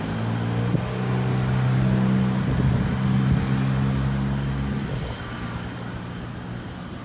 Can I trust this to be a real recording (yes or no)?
yes